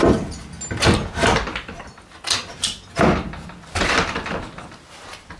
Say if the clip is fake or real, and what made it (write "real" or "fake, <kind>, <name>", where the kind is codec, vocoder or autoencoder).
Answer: real